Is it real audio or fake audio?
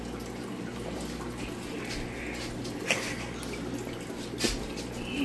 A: real